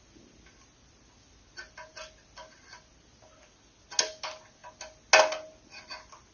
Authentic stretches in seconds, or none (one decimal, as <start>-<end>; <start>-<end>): 0.0-6.3